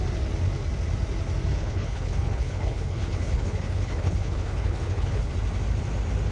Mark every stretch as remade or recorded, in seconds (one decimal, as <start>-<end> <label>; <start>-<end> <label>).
0.0-1.5 recorded; 1.5-5.3 remade; 5.3-6.3 recorded